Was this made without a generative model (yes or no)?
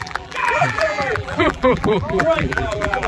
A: no